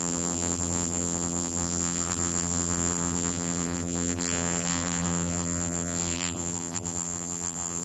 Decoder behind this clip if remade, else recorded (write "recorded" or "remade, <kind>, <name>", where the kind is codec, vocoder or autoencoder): remade, vocoder, BigVGAN v2